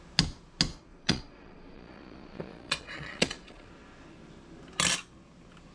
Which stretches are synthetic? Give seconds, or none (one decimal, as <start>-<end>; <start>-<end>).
0.9-3.7